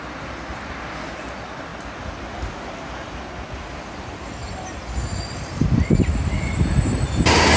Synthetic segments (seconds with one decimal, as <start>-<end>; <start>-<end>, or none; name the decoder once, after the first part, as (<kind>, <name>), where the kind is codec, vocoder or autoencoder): none